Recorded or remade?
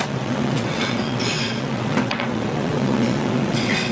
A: remade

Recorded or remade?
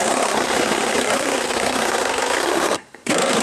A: remade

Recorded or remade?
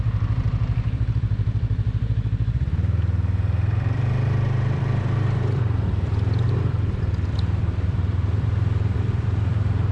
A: remade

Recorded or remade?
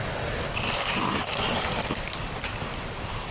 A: remade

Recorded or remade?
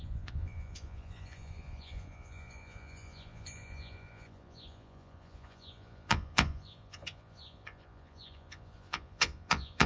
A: remade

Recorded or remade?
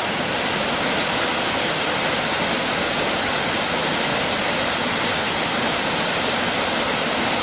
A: recorded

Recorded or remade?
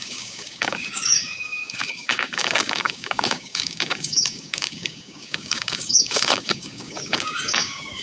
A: remade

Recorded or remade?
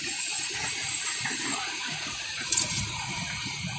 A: remade